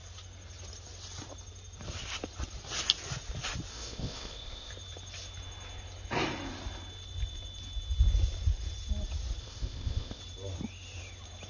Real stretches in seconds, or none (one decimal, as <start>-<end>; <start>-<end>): 0.0-3.7; 4.7-9.4; 10.2-11.5